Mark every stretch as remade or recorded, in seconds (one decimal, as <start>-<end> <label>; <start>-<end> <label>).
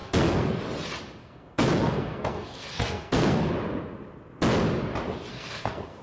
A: 0.0-0.6 remade; 0.6-1.2 recorded; 1.2-3.5 remade; 3.5-5.3 recorded; 5.3-6.0 remade